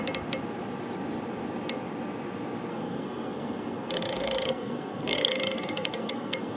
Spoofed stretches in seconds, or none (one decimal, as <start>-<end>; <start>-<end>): 2.7-6.6